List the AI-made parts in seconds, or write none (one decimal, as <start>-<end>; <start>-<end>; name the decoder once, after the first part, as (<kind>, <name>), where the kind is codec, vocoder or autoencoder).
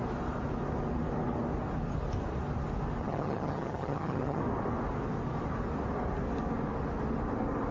3.0-4.4 (vocoder, HiFi-GAN)